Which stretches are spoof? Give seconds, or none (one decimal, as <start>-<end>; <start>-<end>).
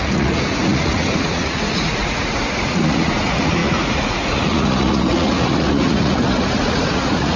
0.0-7.4